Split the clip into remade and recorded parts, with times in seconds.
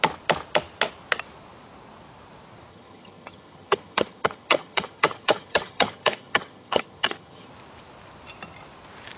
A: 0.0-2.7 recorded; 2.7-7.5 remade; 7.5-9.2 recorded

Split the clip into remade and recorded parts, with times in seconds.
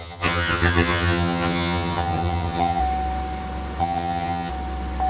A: 0.0-2.8 remade; 2.8-3.8 recorded; 3.8-4.5 remade; 4.5-5.1 recorded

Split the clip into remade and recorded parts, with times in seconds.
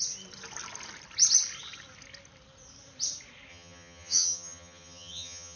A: 0.0-3.5 recorded; 3.5-5.6 remade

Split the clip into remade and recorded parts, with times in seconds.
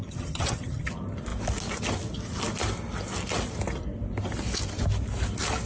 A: 0.0-0.9 remade; 0.9-5.7 recorded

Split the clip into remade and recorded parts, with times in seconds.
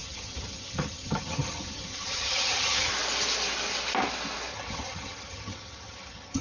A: 0.0-2.9 remade; 2.9-4.5 recorded; 4.5-6.4 remade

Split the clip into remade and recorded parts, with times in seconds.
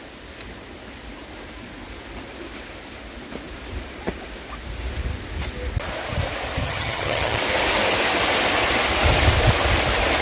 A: 0.0-6.6 recorded; 6.6-7.4 remade; 7.4-10.2 recorded